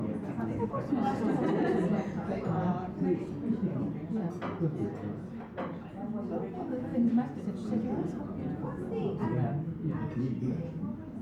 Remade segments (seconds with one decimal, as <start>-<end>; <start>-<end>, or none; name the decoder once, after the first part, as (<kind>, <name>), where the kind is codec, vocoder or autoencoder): none

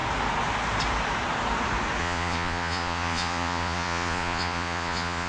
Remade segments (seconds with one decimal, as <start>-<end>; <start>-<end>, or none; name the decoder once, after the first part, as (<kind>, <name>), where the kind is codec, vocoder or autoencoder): 2.0-5.3 (vocoder, Vocos)

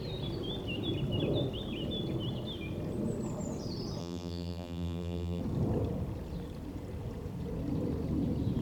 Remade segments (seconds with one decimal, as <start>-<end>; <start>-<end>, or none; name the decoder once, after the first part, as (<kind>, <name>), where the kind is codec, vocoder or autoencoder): 4.0-5.4 (vocoder, BigVGAN v2)

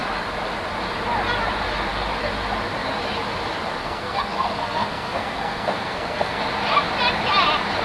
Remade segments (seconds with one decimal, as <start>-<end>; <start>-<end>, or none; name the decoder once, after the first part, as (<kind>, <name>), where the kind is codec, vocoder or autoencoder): 3.8-6.4 (codec, SNAC)

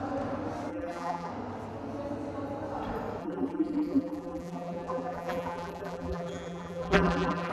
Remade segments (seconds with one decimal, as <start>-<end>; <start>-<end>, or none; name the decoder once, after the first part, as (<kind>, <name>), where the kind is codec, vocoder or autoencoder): 0.7-1.3 (vocoder, BigVGAN v2); 3.2-7.5

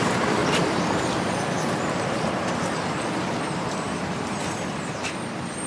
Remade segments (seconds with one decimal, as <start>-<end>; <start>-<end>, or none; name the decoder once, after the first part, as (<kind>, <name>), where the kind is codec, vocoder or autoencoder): 0.0-0.4 (vocoder, BigVGAN v2); 3.0-5.7